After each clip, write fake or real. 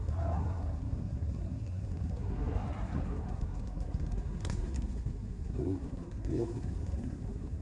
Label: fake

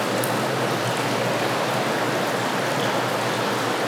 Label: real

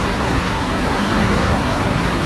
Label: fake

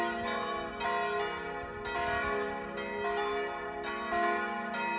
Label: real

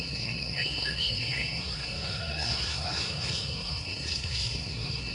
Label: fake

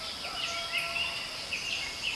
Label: real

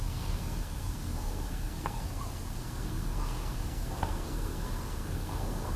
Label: fake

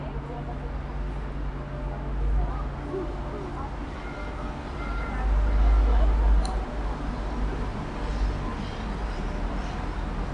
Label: real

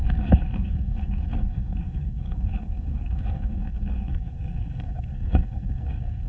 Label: fake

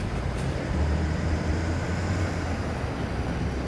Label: real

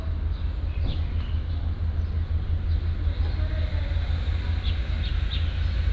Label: real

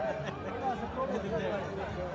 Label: real